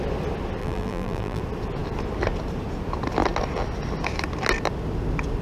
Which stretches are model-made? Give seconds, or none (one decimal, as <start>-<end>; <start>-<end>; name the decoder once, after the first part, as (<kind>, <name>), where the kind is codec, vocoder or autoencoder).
0.6-1.4 (vocoder, BigVGAN v2)